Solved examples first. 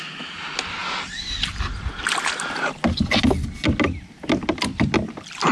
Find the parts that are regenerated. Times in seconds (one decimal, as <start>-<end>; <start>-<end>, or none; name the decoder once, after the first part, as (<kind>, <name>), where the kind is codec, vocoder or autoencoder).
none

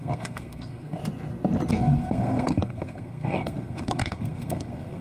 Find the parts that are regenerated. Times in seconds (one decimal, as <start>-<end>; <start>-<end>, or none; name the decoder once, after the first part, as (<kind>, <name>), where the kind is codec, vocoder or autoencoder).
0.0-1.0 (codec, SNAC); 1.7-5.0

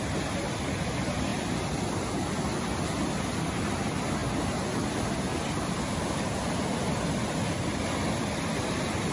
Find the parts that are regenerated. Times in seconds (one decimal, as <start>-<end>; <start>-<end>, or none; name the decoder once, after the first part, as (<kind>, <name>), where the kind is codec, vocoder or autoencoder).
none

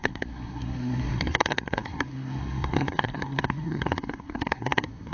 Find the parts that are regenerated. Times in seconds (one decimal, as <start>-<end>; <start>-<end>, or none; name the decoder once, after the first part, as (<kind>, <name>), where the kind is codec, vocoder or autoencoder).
0.0-5.1 (codec, SNAC)